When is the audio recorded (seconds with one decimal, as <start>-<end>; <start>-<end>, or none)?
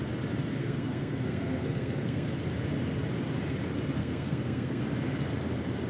0.0-0.6; 2.4-4.0; 4.8-5.9